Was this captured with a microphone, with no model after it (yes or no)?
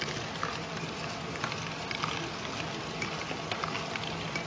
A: yes